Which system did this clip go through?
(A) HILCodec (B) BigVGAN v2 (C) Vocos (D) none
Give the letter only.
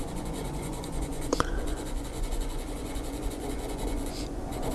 C